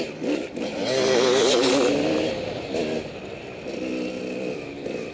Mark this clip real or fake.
real